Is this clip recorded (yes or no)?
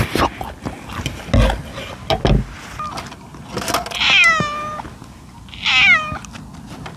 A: yes